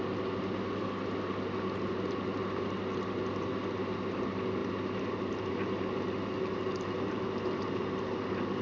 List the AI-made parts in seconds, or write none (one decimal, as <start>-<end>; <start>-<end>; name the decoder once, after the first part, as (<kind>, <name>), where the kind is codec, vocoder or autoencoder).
none